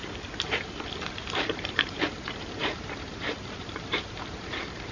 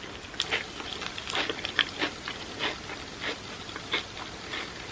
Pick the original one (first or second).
second